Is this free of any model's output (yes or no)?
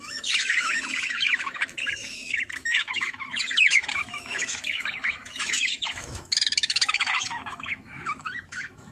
no